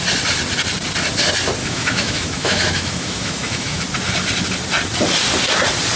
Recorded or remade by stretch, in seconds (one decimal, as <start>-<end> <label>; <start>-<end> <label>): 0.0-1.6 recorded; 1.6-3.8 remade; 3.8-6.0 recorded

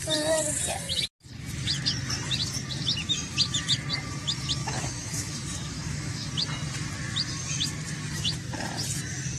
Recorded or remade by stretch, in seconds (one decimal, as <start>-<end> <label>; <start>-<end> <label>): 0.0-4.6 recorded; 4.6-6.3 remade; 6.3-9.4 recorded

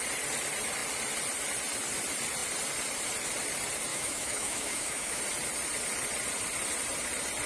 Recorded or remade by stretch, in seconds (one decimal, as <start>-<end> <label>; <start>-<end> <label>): 0.0-3.9 recorded; 3.9-5.2 remade; 5.2-7.5 recorded

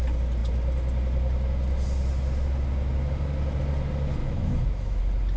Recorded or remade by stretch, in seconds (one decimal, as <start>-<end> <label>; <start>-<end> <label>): 0.0-4.2 recorded; 4.2-5.0 remade; 5.0-5.4 recorded

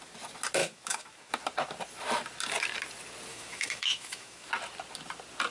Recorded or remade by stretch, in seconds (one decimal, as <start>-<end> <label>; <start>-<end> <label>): 0.0-0.6 recorded; 0.6-1.3 remade; 1.3-3.3 recorded; 3.3-4.5 remade; 4.5-5.5 recorded

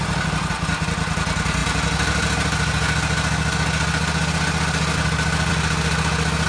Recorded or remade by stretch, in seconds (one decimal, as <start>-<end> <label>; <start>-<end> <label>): 0.0-6.5 recorded